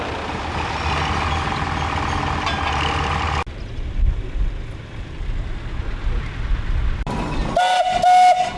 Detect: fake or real real